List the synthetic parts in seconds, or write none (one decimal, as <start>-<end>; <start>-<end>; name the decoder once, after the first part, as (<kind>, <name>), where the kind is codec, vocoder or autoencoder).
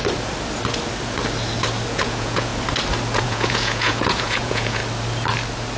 1.9-2.5 (vocoder, Vocos); 3.2-4.8